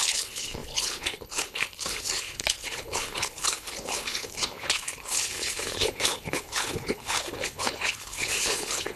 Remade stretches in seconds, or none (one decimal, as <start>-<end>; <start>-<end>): 0.0-9.0